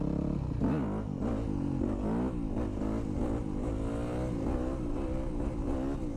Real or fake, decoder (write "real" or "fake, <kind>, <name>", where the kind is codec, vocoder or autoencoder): real